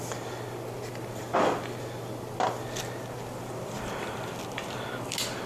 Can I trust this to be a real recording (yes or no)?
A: yes